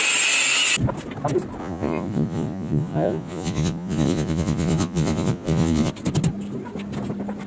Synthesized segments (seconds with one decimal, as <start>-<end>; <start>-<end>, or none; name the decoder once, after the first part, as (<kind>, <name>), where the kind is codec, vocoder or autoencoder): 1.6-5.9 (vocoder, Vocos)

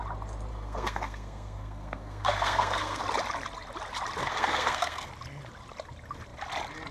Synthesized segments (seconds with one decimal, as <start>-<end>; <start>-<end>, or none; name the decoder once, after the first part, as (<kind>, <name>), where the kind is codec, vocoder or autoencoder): 0.5-3.0 (codec, SNAC); 4.2-5.1

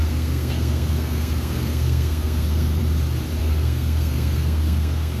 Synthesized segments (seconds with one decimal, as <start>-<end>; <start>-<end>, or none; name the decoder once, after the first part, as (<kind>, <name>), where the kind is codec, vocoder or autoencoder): 0.0-2.8 (codec, SNAC); 3.4-5.2